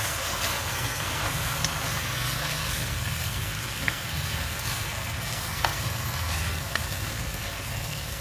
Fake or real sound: fake